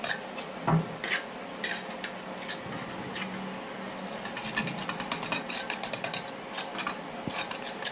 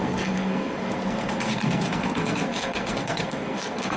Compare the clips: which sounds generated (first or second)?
second